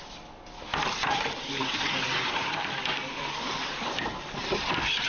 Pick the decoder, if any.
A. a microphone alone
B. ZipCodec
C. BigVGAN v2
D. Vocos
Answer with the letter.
C